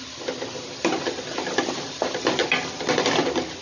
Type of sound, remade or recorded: recorded